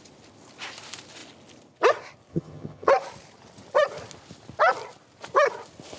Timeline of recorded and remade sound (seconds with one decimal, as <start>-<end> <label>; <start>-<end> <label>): 0.0-2.3 recorded; 2.3-2.9 remade; 2.9-6.0 recorded